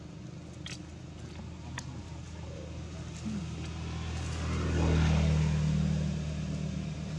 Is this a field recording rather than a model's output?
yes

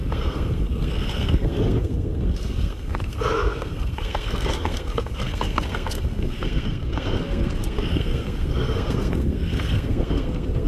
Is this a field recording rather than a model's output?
no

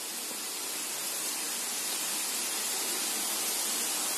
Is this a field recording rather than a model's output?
yes